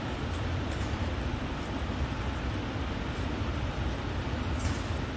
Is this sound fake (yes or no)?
no